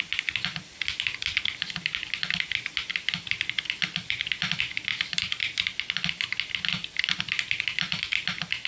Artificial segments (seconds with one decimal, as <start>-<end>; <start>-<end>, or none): none